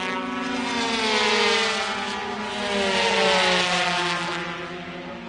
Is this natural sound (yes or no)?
yes